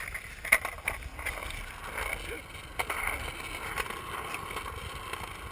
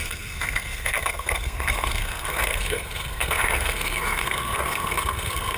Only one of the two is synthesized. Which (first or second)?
second